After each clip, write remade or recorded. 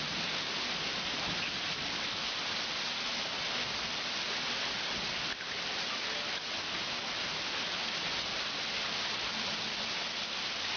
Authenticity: recorded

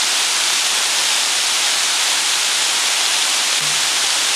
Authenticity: recorded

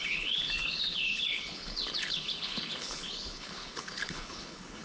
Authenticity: remade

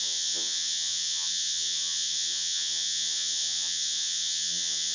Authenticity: remade